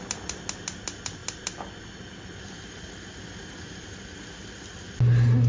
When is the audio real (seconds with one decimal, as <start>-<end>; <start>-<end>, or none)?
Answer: 0.0-5.5